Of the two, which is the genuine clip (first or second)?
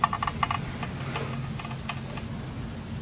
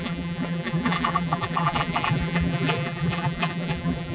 first